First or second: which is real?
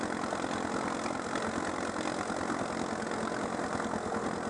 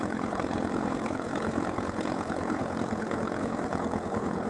first